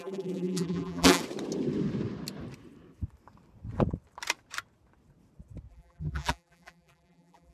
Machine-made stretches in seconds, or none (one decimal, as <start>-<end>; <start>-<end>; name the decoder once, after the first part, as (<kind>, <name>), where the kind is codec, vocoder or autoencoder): 0.0-1.2 (vocoder, BigVGAN v2); 5.7-7.5